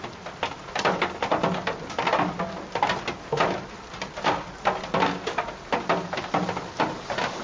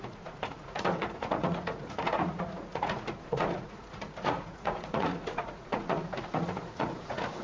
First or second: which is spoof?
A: second